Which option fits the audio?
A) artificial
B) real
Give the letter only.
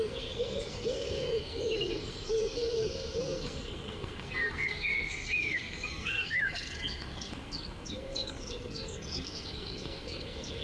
A